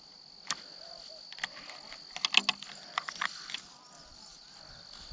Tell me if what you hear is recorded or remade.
recorded